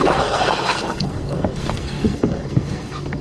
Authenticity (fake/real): fake